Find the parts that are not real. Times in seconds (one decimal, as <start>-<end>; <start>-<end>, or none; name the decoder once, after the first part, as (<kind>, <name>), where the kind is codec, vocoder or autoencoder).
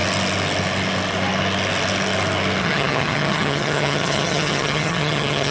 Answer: 2.6-5.5 (vocoder, HiFi-GAN)